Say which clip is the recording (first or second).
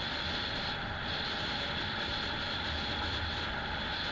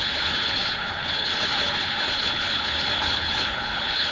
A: first